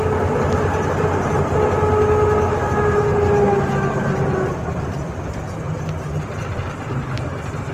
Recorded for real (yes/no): yes